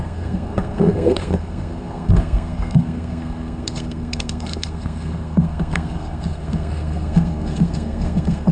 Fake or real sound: fake